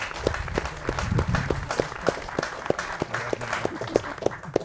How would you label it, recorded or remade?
recorded